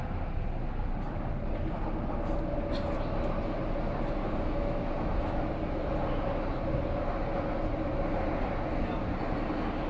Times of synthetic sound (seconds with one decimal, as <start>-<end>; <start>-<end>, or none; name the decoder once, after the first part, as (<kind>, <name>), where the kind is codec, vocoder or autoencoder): 4.2-5.5 (autoencoder, DAC-VAE)